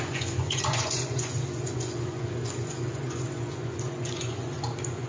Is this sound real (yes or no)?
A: no